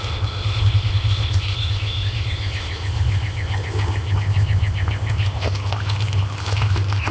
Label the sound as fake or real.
fake